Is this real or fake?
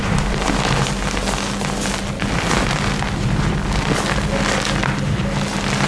real